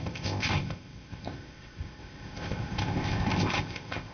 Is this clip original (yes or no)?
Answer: no